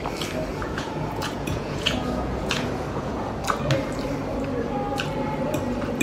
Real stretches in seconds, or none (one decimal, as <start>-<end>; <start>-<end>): 0.0-0.5; 3.2-6.0